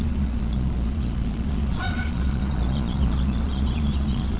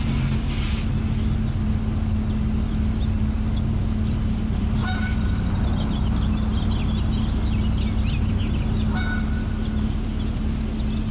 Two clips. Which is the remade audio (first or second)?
first